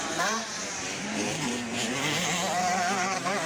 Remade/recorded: remade